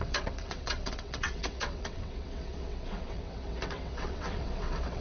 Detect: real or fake fake